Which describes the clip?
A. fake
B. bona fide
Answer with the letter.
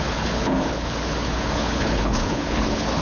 A